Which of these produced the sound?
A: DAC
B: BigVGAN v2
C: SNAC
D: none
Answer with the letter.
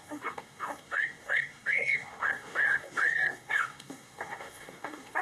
C